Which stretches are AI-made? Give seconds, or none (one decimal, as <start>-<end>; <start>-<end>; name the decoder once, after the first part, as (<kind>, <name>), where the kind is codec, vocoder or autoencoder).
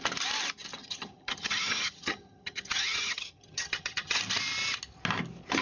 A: 0.8-4.2 (vocoder, HiFi-GAN)